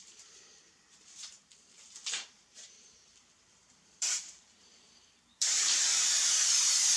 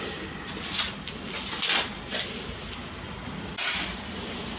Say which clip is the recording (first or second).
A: second